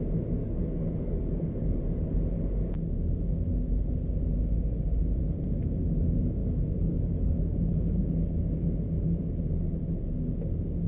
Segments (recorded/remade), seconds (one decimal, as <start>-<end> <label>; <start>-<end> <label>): 0.0-0.4 recorded; 0.4-1.8 remade; 1.8-6.4 recorded; 6.4-8.7 remade; 8.7-10.9 recorded